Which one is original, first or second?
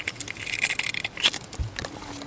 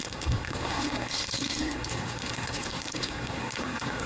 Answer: first